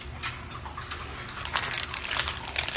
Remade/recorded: recorded